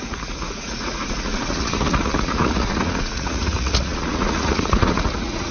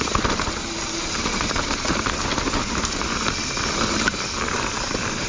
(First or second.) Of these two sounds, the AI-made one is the first